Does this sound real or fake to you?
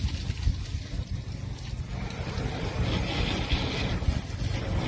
real